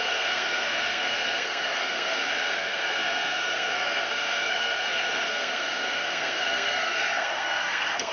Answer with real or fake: fake